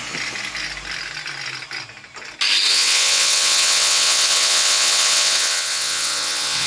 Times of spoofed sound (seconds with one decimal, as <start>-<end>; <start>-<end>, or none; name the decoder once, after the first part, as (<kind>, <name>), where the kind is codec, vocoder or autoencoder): 2.7-6.7 (vocoder, WaveNeXt)